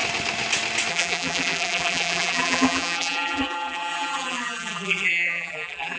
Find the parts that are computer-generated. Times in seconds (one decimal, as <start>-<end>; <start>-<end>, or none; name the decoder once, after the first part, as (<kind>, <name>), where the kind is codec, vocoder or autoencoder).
0.9-6.0 (vocoder, BigVGAN v2)